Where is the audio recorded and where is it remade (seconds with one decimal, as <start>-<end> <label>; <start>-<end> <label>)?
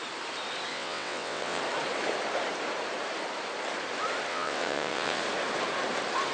0.0-0.7 recorded; 0.7-1.6 remade; 1.6-4.3 recorded; 4.3-5.2 remade; 5.2-6.3 recorded